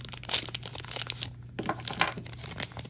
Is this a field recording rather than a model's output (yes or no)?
yes